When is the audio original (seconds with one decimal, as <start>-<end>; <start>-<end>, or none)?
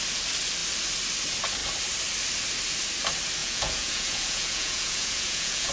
0.0-3.4